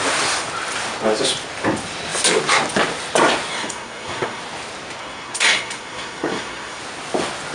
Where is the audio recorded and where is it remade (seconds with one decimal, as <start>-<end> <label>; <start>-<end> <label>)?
0.0-3.5 recorded; 3.5-4.4 remade; 4.4-5.0 recorded; 5.0-6.8 remade; 6.8-7.5 recorded